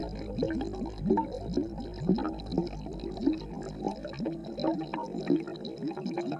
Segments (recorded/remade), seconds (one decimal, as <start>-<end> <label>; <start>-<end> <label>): 0.0-6.4 recorded